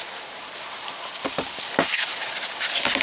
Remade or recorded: recorded